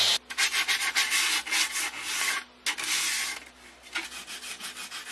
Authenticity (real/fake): real